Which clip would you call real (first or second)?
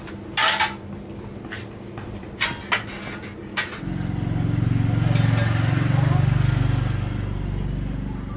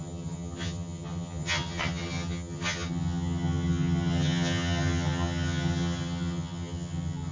first